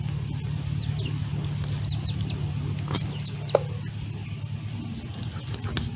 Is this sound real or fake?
real